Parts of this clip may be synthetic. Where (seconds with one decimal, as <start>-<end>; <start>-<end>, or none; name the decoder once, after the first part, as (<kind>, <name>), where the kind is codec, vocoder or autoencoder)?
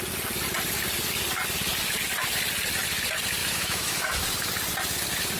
3.4-4.2 (autoencoder, DAC-VAE)